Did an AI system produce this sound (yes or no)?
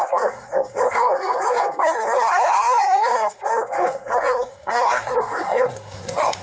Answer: yes